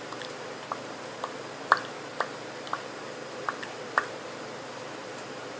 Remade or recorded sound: recorded